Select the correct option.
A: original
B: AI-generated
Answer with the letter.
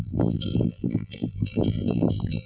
B